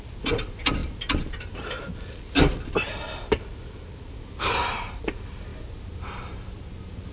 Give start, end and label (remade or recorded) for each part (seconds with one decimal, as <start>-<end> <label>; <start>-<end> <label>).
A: 0.0-0.8 remade; 0.8-4.4 recorded; 4.4-5.5 remade; 5.5-7.1 recorded